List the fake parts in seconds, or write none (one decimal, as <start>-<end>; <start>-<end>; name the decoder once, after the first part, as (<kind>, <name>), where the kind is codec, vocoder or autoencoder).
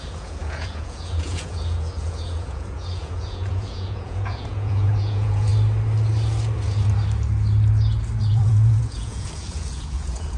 0.0-5.5 (vocoder, Vocos); 8.2-10.4